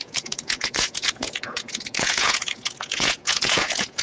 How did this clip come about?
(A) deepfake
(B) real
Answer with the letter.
A